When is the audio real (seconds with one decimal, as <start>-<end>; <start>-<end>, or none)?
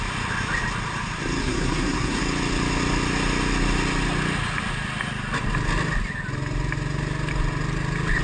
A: 0.0-1.4; 2.2-8.2